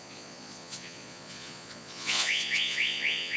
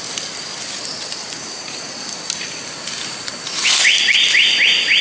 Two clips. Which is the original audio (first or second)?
second